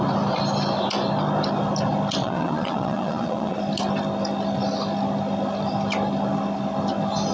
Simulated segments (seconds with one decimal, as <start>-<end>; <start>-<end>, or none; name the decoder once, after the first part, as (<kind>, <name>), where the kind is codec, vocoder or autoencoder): 2.2-3.6 (vocoder, Vocos)